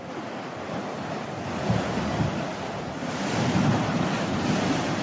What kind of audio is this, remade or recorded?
recorded